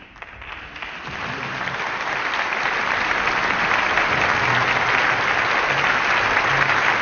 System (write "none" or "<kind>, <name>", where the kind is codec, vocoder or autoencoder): none